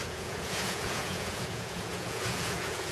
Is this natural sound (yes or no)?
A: no